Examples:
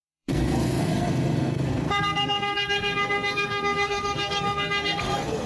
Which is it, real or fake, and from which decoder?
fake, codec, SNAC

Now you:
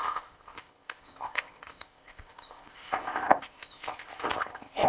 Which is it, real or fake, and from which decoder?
fake, codec, ZipCodec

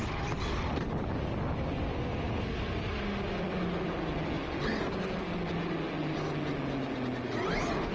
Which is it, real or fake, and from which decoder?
real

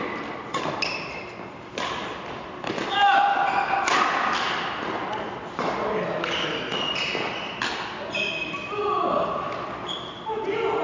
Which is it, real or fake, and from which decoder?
real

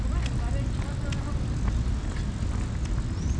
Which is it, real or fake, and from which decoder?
real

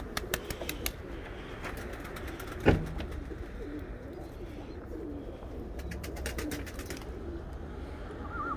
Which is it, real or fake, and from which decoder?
real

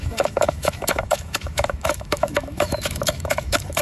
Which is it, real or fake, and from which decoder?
fake, autoencoder, DAC-VAE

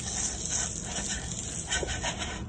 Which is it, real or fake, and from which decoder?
real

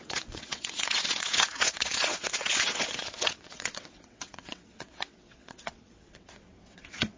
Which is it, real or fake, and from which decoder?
fake, vocoder, WaveNeXt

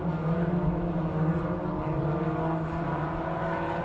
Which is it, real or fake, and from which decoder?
real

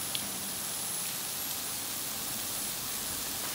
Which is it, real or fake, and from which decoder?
real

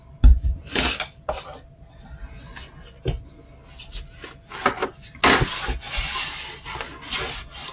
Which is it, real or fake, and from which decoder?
real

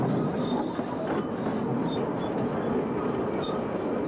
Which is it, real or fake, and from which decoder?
real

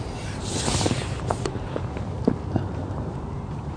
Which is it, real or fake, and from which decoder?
fake, vocoder, BigVGAN v2